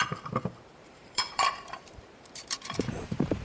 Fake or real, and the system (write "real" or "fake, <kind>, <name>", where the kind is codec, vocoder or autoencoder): fake, vocoder, BigVGAN v2